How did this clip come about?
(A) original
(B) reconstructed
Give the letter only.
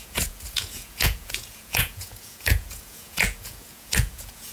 B